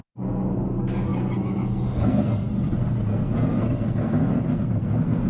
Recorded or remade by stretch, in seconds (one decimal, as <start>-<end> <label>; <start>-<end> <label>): 0.0-5.3 remade